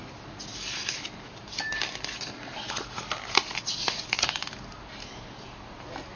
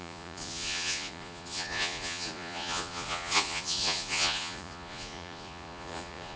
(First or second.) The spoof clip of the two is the second